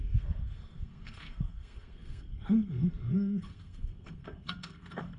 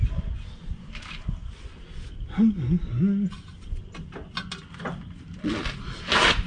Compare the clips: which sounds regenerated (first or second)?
first